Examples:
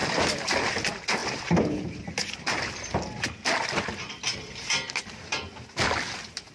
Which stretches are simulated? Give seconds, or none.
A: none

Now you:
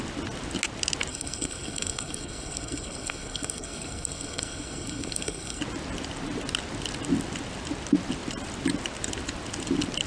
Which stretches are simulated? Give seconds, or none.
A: 1.1-5.6 (codec, SNAC)

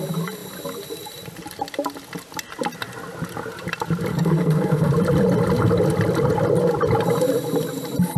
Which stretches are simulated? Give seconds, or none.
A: 4.1-4.9 (codec, SNAC)

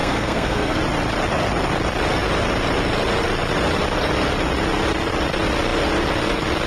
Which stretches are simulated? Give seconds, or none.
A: 0.0-0.8 (codec, SNAC)

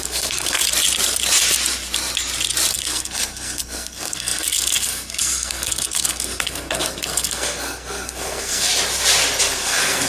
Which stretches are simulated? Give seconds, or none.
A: 0.0-0.6 (codec, SNAC); 2.7-8.7; 9.4-10.1

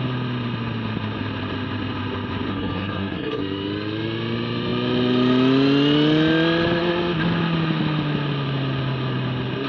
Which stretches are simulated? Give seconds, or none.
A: 2.5-3.4 (codec, SNAC)